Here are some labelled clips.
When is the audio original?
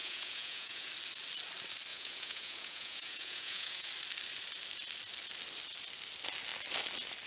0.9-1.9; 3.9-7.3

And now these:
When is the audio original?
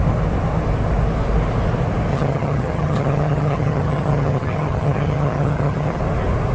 0.0-2.1; 6.0-6.5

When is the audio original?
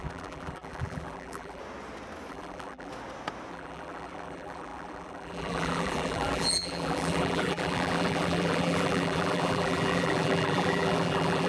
1.6-2.3; 2.9-3.5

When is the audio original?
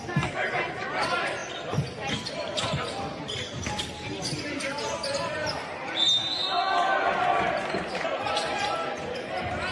0.0-9.7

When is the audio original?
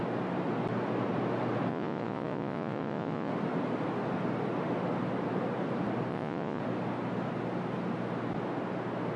0.0-1.7; 3.3-6.1; 6.6-9.2